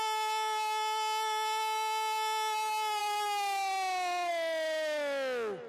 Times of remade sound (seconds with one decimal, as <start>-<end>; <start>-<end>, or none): none